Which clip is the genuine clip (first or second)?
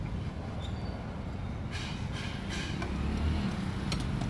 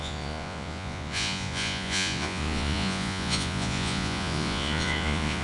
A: first